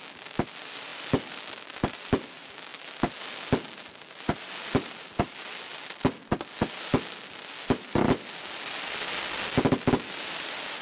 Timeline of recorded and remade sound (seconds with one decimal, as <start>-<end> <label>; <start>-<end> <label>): 0.0-10.8 recorded